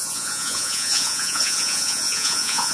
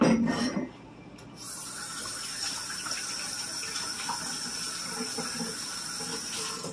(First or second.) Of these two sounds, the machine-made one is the first